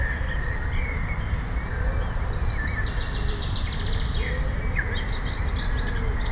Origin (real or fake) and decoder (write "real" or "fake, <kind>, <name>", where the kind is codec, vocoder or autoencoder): real